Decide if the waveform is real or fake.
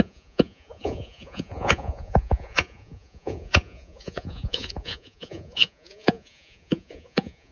fake